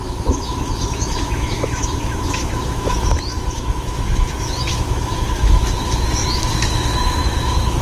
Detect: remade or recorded remade